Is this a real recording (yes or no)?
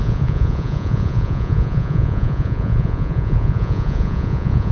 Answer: no